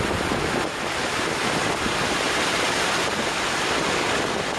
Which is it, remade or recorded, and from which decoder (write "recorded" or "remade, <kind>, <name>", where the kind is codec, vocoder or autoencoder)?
recorded